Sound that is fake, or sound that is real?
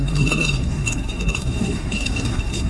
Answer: fake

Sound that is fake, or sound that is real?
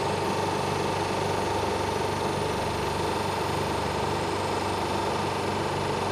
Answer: real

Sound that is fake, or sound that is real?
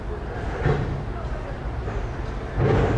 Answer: real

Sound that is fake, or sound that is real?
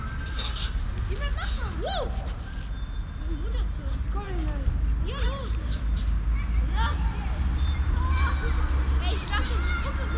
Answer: real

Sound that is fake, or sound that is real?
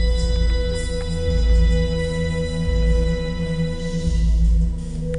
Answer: real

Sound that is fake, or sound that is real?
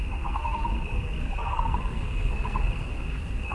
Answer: fake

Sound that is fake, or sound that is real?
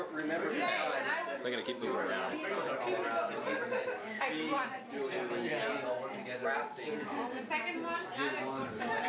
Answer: real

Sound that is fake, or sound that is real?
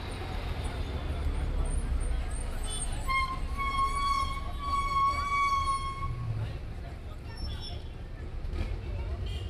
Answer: real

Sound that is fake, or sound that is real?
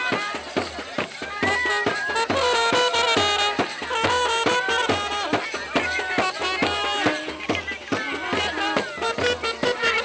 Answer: real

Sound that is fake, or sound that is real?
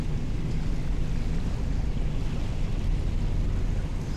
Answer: real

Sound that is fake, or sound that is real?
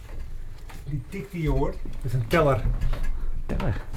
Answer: real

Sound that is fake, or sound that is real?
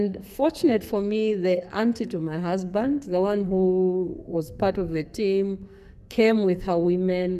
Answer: fake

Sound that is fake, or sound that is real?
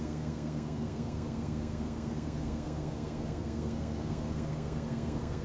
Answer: fake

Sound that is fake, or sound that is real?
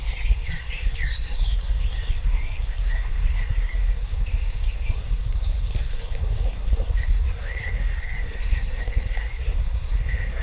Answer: fake